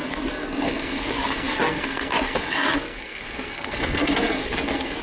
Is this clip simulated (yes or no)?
yes